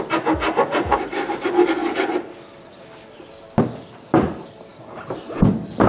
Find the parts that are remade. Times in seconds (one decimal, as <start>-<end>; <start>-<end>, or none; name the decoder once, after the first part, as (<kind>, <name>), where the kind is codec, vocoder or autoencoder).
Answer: 1.8-3.3 (vocoder, BigVGAN v2); 4.7-5.2